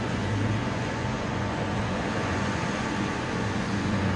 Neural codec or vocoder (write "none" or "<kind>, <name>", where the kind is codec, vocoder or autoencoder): vocoder, Vocos